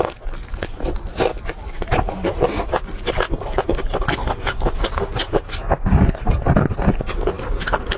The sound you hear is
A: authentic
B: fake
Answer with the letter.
A